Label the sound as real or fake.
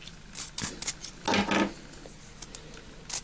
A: real